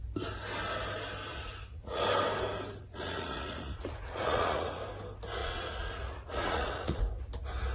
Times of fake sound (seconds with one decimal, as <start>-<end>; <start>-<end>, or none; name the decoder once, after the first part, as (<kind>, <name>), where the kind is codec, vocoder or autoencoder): 1.3-2.0 (vocoder, Vocos); 2.8-4.8; 5.4-7.0